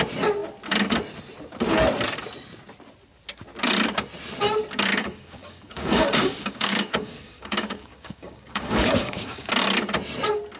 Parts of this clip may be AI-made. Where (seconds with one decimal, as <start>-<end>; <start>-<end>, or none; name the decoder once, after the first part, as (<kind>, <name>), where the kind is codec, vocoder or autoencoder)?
5.0-9.5 (codec, DAC)